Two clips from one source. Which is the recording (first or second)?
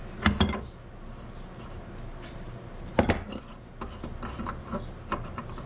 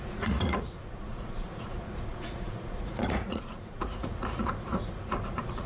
first